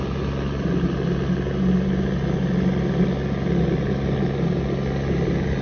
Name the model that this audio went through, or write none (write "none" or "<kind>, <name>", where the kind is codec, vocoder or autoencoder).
none